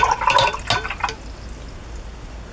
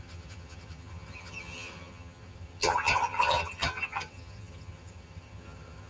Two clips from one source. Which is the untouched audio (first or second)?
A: first